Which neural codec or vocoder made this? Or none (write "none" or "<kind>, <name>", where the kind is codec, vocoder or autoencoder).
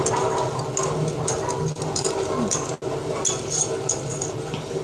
none